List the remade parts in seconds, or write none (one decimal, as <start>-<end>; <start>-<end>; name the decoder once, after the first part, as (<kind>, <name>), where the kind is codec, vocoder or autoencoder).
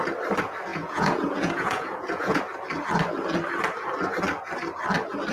0.7-2.4 (vocoder, Vocos)